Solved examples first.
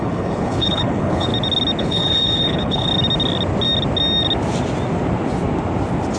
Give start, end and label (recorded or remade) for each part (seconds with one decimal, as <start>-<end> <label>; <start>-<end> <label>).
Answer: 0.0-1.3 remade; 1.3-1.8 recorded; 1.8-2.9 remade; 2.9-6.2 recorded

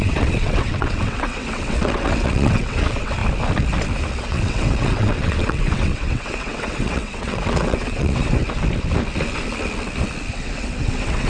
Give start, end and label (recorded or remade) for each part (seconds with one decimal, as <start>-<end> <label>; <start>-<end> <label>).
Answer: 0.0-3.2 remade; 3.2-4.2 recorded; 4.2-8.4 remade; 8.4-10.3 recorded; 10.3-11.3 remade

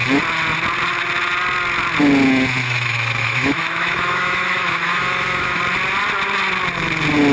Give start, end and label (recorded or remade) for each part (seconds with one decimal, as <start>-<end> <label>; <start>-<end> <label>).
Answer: 0.0-2.6 recorded; 2.6-5.6 remade; 5.6-7.3 recorded